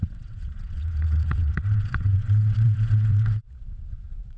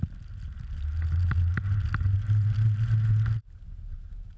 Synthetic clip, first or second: first